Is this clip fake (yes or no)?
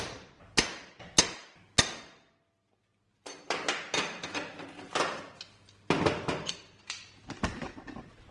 no